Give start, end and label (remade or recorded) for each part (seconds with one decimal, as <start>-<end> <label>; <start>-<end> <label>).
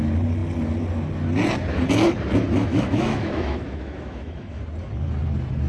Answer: 0.0-2.6 recorded; 2.6-4.6 remade; 4.6-5.7 recorded